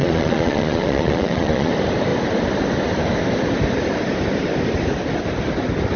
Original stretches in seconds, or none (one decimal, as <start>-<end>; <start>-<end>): 1.7-6.0

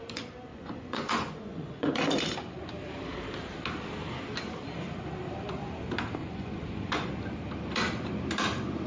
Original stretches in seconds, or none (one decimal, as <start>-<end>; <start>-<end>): 0.0-0.5; 1.9-6.2; 7.1-8.9

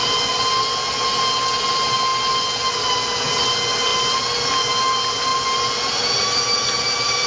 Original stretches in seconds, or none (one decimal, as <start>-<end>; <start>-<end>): 0.0-7.3

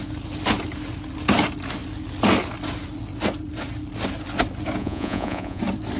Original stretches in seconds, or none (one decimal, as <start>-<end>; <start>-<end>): 0.0-4.8; 5.6-6.0

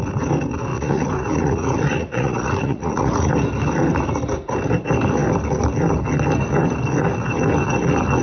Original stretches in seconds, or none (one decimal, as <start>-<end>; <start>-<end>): 0.0-0.7; 3.3-8.2

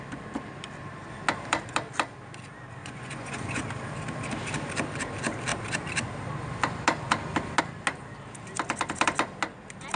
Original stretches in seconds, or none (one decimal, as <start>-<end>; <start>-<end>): 0.0-2.8; 3.6-10.0

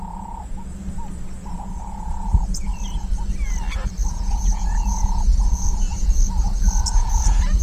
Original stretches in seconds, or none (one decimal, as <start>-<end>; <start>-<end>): 0.7-1.6; 2.7-4.1